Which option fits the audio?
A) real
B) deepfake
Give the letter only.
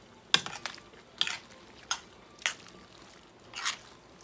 A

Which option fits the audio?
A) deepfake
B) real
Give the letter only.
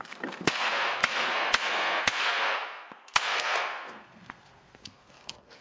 A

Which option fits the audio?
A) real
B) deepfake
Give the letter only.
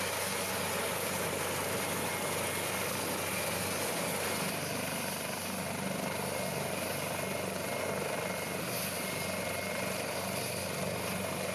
A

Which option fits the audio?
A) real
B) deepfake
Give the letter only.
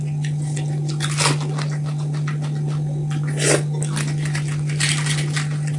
A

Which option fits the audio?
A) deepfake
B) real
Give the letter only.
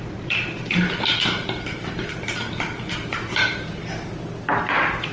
B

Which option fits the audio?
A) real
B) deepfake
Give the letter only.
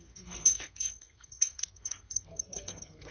B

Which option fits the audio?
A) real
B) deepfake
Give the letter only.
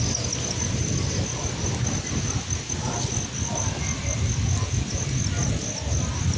A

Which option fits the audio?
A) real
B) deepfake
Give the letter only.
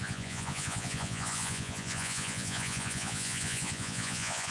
B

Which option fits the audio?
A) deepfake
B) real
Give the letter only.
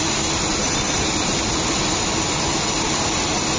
B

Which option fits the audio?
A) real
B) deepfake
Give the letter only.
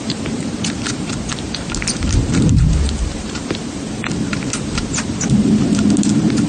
B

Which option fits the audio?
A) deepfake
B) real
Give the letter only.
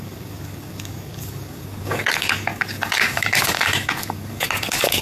A